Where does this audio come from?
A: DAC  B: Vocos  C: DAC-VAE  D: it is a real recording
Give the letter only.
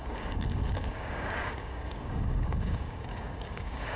A